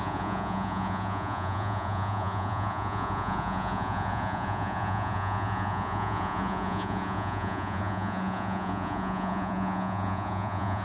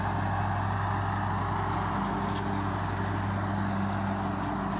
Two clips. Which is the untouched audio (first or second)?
second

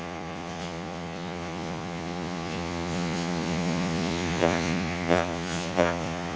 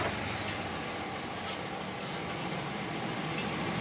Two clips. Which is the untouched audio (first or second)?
second